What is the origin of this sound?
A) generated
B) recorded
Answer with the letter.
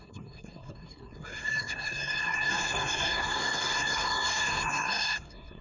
A